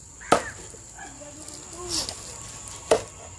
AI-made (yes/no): no